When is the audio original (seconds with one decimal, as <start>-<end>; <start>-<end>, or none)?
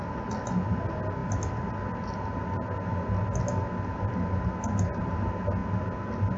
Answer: 0.0-6.4